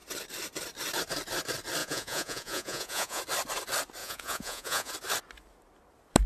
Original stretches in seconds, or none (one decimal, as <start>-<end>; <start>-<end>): 0.0-1.8; 3.2-4.0; 4.9-6.3